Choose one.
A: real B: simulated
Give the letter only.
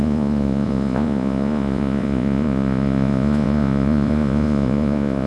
B